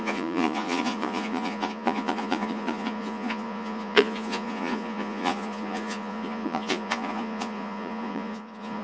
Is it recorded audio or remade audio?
remade